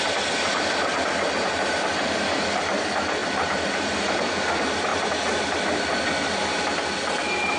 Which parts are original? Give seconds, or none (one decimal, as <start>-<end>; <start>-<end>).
0.0-7.6